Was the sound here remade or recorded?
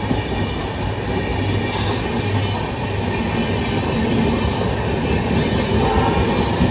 recorded